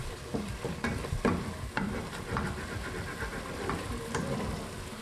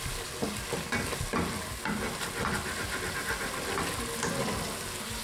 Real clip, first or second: second